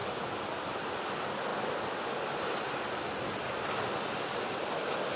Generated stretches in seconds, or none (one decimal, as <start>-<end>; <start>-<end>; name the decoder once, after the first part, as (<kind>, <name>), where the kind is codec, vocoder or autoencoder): none